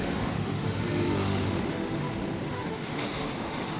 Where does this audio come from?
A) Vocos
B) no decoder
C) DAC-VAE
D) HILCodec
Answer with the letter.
C